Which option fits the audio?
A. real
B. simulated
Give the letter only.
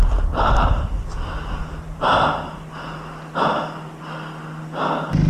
A